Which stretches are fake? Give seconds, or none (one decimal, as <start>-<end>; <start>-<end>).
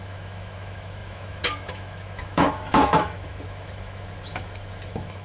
0.0-5.2